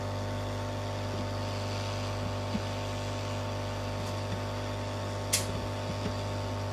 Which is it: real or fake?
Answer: real